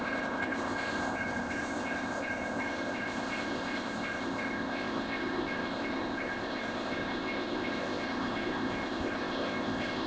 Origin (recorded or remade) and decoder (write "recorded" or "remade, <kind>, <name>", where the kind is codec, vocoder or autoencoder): remade, codec, ZipCodec